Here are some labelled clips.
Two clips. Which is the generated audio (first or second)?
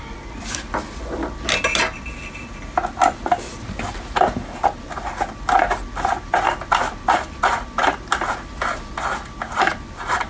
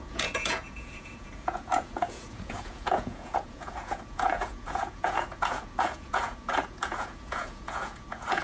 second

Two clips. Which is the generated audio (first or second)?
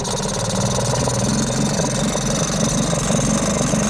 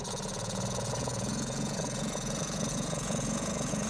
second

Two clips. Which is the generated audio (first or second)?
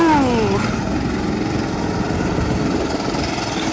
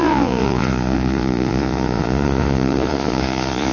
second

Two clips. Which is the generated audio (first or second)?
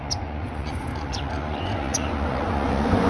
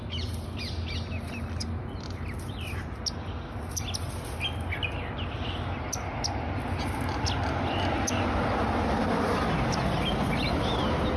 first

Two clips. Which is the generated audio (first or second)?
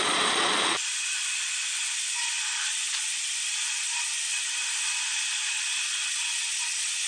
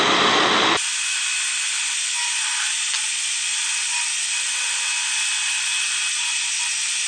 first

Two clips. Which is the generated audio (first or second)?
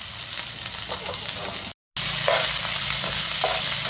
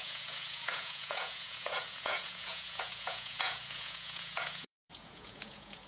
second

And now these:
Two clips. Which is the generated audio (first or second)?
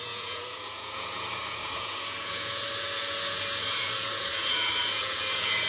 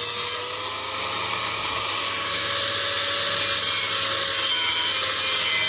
first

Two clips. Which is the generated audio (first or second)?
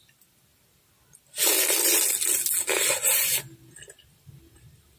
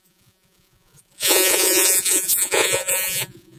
second